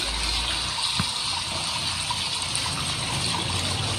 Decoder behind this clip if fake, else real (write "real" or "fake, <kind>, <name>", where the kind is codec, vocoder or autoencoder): real